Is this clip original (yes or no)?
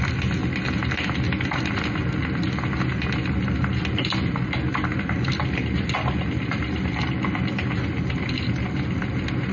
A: yes